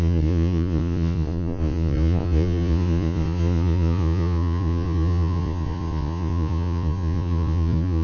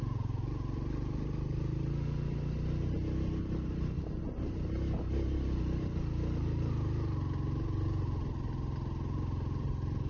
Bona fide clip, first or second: second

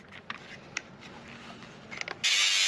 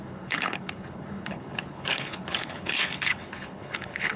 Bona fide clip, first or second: first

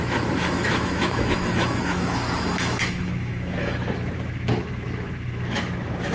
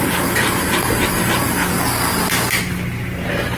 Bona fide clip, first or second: second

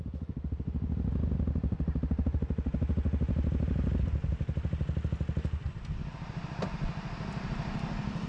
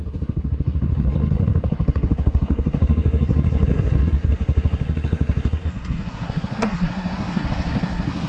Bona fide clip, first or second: first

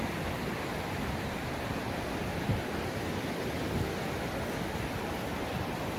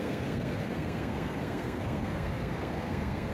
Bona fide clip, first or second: first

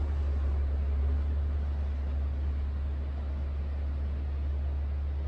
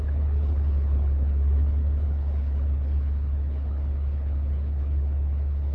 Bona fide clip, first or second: first